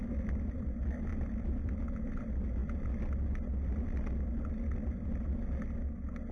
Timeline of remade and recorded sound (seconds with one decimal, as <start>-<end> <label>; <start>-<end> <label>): 0.0-1.1 recorded; 1.1-1.7 remade; 1.7-6.3 recorded